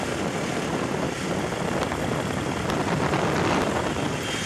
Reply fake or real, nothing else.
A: real